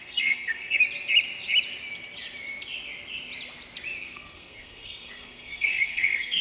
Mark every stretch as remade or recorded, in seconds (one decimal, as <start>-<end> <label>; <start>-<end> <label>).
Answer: 0.0-0.8 remade; 0.8-4.0 recorded; 4.0-6.4 remade